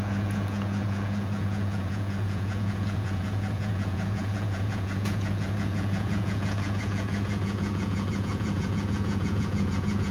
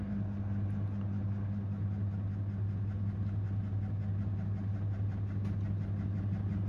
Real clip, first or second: second